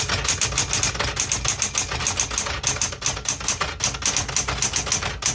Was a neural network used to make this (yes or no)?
no